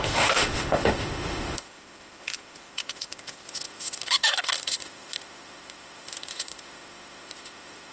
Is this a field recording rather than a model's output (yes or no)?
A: no